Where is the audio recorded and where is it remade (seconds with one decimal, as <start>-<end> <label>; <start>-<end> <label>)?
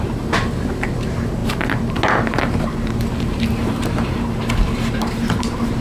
0.0-1.4 remade; 1.4-2.3 recorded; 2.3-5.8 remade